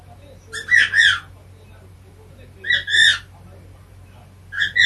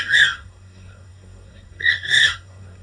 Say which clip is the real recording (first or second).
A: first